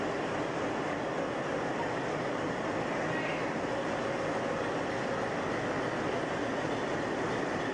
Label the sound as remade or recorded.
recorded